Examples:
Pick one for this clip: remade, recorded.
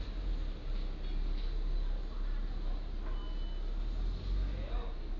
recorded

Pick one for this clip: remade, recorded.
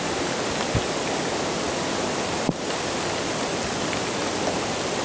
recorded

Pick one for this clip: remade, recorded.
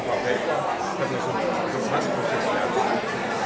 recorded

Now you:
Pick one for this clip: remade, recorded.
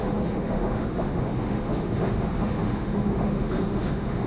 remade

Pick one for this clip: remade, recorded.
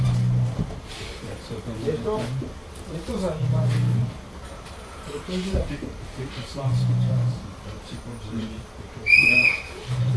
remade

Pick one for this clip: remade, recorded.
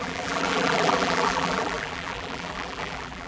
remade